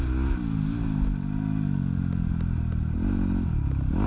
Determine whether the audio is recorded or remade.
recorded